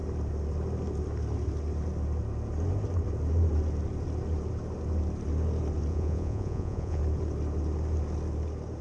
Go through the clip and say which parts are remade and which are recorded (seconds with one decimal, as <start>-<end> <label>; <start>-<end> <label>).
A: 0.0-5.9 recorded; 5.9-7.0 remade; 7.0-8.8 recorded